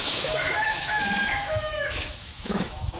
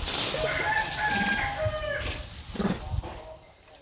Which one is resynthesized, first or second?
first